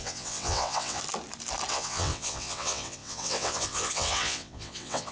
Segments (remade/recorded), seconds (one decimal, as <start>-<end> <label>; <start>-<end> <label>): 0.0-1.0 remade; 1.0-1.7 recorded; 1.7-5.1 remade